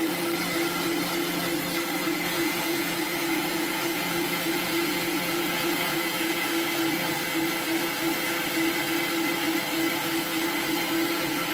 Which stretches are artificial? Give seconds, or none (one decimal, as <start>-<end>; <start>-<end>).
2.0-6.5